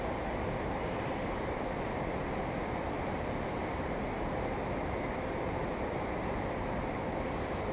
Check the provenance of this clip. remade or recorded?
recorded